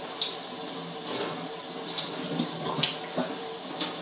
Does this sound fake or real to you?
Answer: real